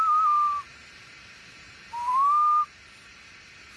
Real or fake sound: real